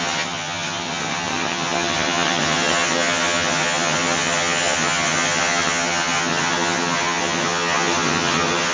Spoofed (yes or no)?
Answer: yes